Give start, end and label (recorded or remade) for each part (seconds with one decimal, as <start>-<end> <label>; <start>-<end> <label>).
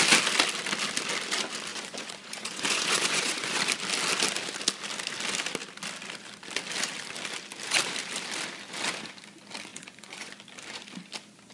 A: 0.0-1.7 recorded; 1.7-3.6 remade; 3.6-9.7 recorded; 9.7-10.3 remade; 10.3-11.5 recorded